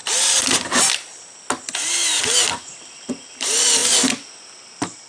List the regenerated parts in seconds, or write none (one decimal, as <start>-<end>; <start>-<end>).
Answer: none